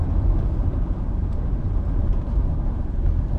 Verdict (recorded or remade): remade